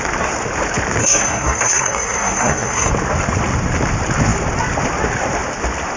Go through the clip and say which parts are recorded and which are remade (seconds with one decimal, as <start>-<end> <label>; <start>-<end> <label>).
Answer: 0.0-1.0 recorded; 1.0-2.9 remade; 2.9-6.0 recorded